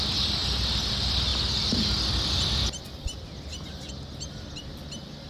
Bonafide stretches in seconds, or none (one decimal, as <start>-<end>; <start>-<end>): 0.0-5.3